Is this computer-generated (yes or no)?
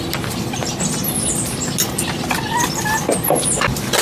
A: no